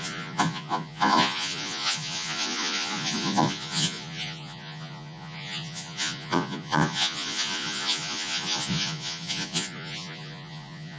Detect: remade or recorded remade